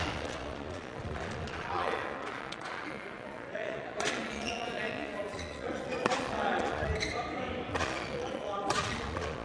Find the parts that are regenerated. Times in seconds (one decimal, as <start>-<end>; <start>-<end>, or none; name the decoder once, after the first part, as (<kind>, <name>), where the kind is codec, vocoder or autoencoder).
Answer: 0.0-6.9 (vocoder, Vocos); 7.7-9.4